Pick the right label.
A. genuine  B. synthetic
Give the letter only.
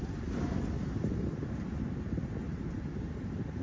A